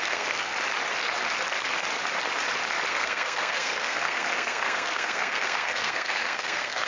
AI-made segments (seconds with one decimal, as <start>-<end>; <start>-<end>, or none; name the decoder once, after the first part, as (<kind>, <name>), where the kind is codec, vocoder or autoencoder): 0.0-0.5 (codec, SNAC); 2.9-6.9